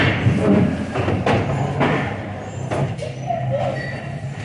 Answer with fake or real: fake